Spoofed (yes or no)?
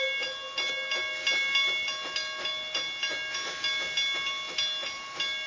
no